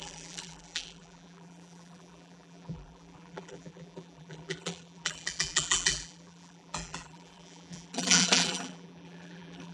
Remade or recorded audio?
remade